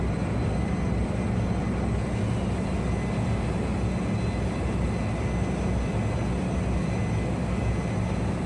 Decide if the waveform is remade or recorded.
recorded